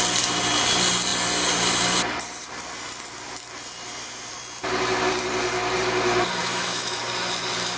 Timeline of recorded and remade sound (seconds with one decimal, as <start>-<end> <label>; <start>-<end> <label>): 0.0-6.4 recorded; 6.4-7.0 remade; 7.0-7.8 recorded